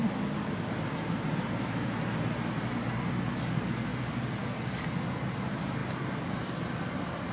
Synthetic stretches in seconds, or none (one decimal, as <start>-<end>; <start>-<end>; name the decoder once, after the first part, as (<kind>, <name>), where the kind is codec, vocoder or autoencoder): none

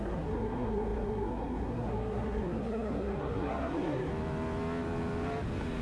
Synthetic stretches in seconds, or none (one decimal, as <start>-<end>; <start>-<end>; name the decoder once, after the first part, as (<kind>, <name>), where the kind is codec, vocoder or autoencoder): 0.0-4.1 (codec, SNAC)

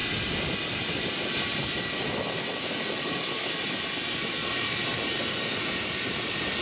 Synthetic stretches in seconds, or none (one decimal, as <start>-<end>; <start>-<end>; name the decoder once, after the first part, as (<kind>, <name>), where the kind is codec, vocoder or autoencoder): none

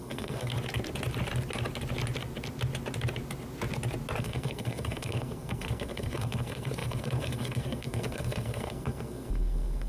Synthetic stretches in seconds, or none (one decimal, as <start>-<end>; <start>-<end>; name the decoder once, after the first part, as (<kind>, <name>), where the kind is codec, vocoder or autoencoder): 0.0-0.5 (codec, SNAC); 4.2-9.9

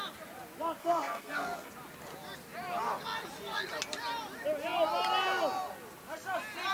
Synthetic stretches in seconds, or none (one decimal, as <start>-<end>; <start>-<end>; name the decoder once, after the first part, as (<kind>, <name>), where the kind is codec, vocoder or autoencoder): 0.8-1.7 (codec, SNAC)

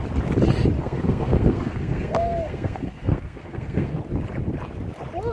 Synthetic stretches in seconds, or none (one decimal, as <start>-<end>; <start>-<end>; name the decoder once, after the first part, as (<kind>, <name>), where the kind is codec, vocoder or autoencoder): 0.8-4.0 (codec, SNAC)

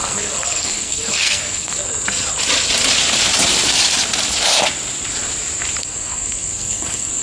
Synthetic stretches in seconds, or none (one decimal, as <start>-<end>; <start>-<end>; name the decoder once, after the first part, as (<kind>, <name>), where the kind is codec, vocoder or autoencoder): 0.0-1.9 (codec, SNAC); 5.8-7.2

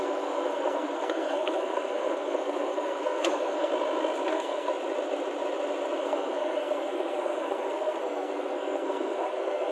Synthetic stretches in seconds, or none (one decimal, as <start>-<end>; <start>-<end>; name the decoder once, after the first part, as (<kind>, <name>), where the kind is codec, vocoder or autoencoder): 0.0-3.7 (codec, SNAC); 4.3-4.7; 6.0-9.7